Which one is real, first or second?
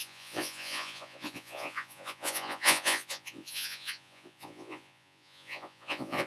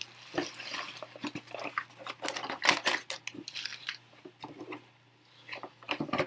second